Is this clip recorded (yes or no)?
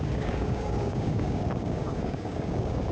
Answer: no